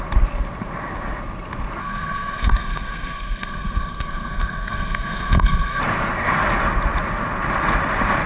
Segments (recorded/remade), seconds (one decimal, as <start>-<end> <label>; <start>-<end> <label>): 0.0-1.8 recorded; 1.8-5.8 remade; 5.8-8.3 recorded